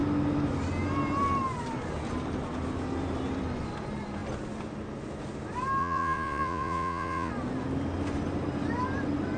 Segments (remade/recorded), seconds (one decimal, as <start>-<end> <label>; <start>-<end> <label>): 0.0-5.8 recorded; 5.8-7.3 remade; 7.3-9.4 recorded